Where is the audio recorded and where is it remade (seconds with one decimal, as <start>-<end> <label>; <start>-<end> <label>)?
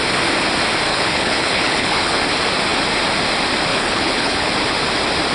0.0-0.9 recorded; 0.9-2.2 remade; 2.2-3.7 recorded; 3.7-4.5 remade; 4.5-5.3 recorded